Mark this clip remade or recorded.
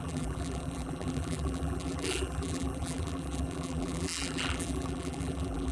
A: remade